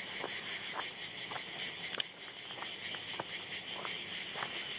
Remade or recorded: recorded